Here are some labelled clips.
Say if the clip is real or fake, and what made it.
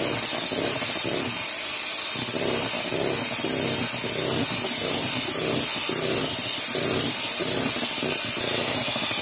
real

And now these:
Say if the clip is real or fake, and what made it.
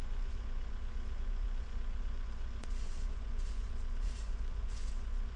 fake, vocoder, Vocos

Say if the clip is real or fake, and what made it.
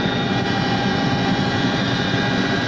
fake, vocoder, Vocos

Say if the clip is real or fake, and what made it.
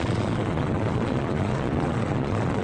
fake, vocoder, Vocos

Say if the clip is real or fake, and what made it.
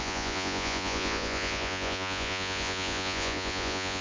fake, vocoder, Vocos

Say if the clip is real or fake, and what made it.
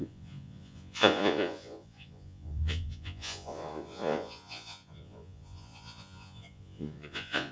fake, vocoder, Vocos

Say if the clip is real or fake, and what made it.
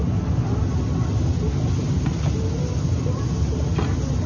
real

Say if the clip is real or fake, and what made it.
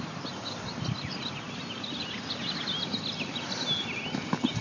real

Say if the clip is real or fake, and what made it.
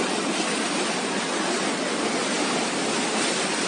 real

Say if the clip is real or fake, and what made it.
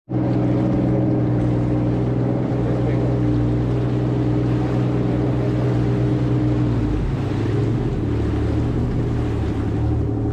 real